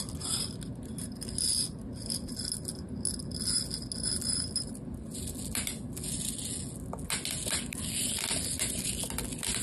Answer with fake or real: real